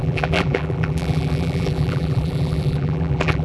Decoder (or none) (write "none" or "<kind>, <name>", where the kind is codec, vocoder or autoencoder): vocoder, BigVGAN v2